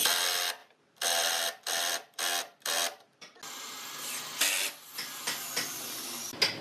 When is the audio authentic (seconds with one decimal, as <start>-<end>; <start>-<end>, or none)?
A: 0.0-6.6

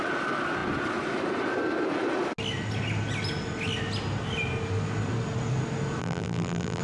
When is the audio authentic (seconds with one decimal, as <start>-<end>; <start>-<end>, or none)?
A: 0.0-6.0

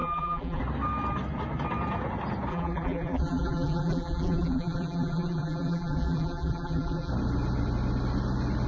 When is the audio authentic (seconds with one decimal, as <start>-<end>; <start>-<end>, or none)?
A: 0.6-2.5; 7.1-8.7

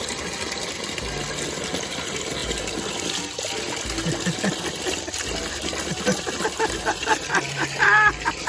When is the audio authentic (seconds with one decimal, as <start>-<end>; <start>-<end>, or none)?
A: 0.0-8.5

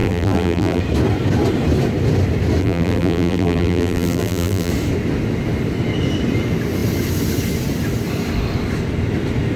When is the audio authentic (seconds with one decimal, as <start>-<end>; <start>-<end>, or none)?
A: 0.8-2.6; 4.7-9.6

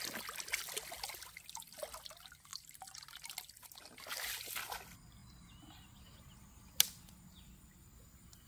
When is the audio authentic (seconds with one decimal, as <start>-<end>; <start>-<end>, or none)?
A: 0.0-2.5; 3.6-5.2; 6.0-8.5